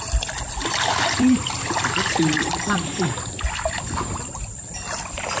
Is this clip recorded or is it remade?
remade